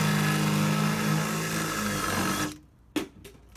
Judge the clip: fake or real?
real